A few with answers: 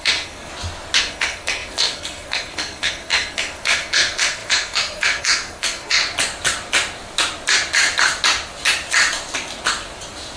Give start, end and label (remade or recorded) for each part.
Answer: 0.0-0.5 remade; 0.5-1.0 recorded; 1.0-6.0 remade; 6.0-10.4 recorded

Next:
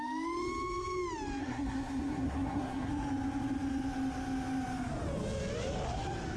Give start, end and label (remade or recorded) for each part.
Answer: 0.0-1.4 recorded; 1.4-2.9 remade; 2.9-6.4 recorded

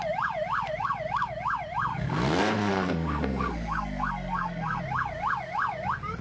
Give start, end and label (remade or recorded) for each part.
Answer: 0.0-1.9 recorded; 1.9-4.8 remade; 4.8-6.2 recorded